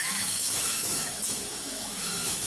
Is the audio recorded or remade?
remade